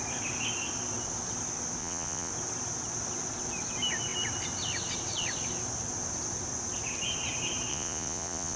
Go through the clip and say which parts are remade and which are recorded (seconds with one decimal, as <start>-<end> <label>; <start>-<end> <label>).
0.0-1.8 recorded; 1.8-2.3 remade; 2.3-7.7 recorded; 7.7-8.6 remade